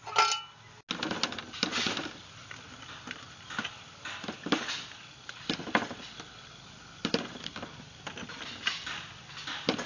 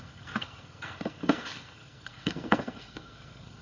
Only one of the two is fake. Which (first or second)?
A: second